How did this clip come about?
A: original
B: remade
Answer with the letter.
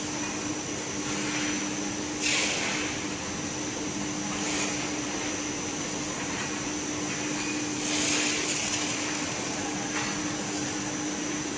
A